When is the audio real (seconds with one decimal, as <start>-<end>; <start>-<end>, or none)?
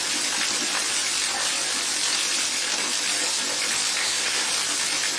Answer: 0.0-4.0; 4.5-5.2